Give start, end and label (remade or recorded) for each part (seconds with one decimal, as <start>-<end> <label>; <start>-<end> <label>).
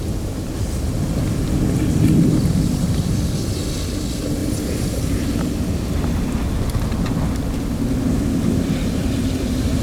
0.0-4.4 recorded; 4.4-5.3 remade; 5.3-9.0 recorded; 9.0-9.8 remade